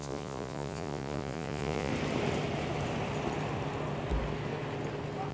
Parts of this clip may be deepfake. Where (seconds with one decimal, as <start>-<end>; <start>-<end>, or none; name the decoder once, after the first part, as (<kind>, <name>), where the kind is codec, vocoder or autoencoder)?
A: 0.0-1.9 (vocoder, Vocos)